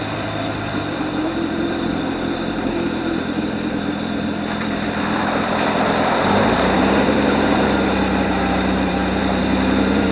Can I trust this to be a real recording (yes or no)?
no